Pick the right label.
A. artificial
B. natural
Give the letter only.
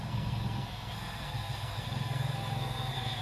A